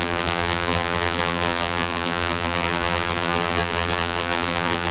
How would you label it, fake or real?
fake